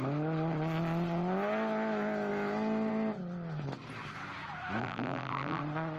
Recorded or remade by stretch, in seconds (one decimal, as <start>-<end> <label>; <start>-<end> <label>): 0.0-4.8 recorded; 4.8-5.6 remade; 5.6-6.0 recorded

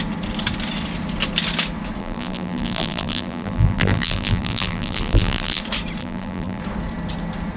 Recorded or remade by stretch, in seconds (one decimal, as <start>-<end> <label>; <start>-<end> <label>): 0.0-2.0 recorded; 2.0-5.6 remade; 5.6-6.0 recorded; 6.0-6.6 remade; 6.6-7.6 recorded